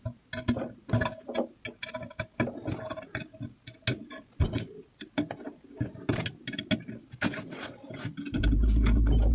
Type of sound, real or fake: real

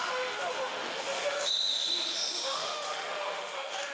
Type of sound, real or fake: fake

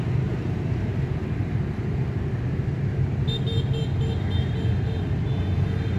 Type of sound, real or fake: real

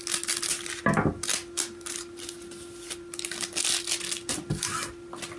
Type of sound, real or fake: real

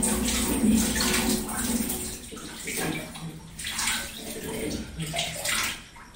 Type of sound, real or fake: real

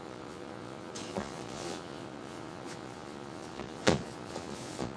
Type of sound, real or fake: fake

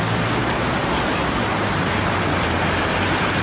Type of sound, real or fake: real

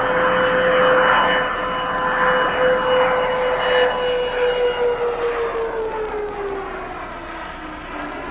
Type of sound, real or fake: real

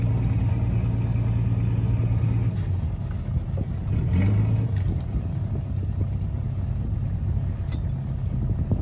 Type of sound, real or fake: real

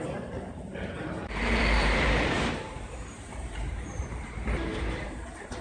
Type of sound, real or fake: fake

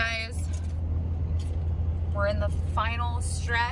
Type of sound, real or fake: real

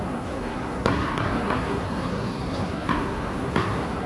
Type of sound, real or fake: fake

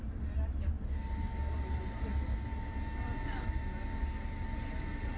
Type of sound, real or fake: real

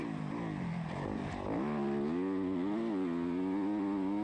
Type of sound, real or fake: real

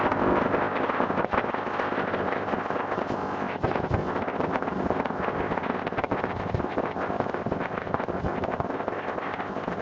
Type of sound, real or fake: fake